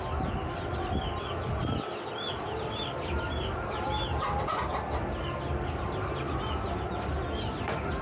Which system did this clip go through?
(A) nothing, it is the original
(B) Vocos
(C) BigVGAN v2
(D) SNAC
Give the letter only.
A